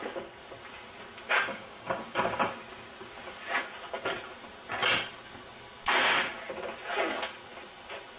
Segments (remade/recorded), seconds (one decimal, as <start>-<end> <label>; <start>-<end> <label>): 0.0-1.5 recorded; 1.5-2.5 remade; 2.5-8.2 recorded